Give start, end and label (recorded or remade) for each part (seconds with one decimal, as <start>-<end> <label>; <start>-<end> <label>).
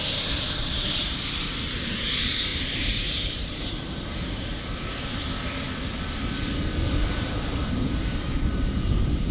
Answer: 0.0-4.5 remade; 4.5-6.9 recorded; 6.9-9.3 remade